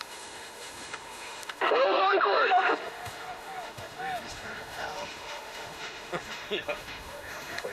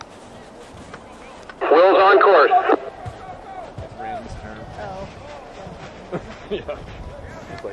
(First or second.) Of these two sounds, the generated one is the first